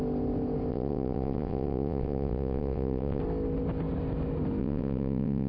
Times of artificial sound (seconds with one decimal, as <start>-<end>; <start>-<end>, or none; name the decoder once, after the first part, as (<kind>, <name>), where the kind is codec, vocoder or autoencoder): 0.7-3.2 (vocoder, WaveNeXt); 4.6-5.5